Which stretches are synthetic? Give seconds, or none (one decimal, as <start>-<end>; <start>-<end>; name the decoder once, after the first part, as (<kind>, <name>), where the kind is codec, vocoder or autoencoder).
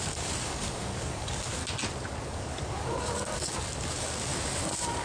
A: 0.0-1.6 (codec, DAC); 2.3-4.3